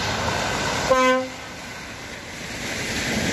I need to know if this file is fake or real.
real